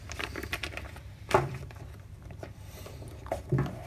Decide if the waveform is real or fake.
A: fake